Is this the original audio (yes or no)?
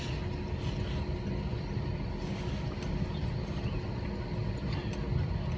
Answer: yes